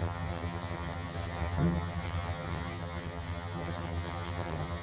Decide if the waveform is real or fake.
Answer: fake